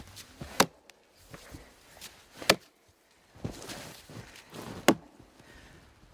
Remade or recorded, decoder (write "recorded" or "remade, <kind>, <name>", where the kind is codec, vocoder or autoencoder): recorded